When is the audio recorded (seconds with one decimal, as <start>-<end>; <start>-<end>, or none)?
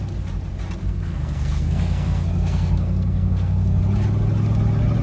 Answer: 0.0-0.8; 3.8-5.0